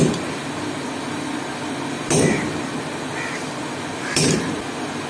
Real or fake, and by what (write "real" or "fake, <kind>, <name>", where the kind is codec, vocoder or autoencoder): real